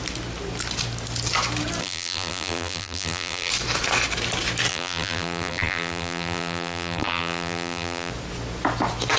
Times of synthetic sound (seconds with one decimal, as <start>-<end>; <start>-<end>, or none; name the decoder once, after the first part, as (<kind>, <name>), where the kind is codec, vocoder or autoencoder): 1.8-3.5 (vocoder, BigVGAN v2); 4.7-8.1